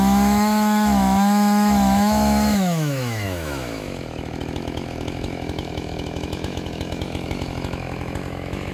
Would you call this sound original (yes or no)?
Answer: no